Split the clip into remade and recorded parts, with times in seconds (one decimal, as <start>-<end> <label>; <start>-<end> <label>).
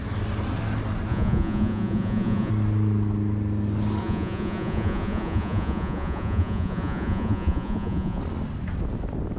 0.0-1.1 recorded; 1.1-2.5 remade; 2.5-4.0 recorded; 4.0-8.2 remade; 8.2-9.4 recorded